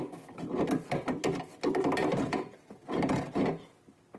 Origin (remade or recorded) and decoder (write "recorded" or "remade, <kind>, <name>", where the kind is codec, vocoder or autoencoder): recorded